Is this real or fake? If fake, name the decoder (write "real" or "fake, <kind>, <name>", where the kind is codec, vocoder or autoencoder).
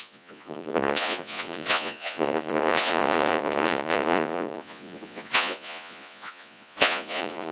fake, vocoder, Vocos